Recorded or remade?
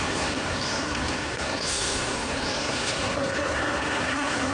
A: remade